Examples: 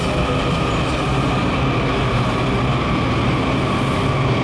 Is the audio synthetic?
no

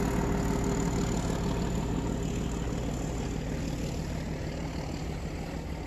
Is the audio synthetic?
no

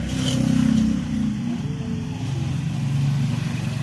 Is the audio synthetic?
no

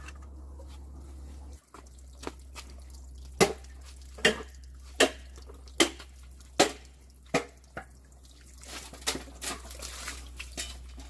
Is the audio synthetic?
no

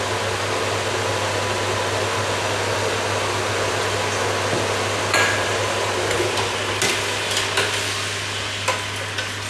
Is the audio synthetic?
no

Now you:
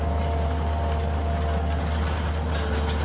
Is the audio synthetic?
no